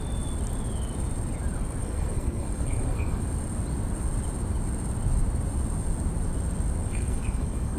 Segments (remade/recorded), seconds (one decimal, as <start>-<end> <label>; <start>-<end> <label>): 0.0-1.8 recorded; 1.8-3.2 remade; 3.2-6.8 recorded; 6.8-7.8 remade